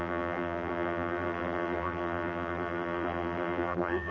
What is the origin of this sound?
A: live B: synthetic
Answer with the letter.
B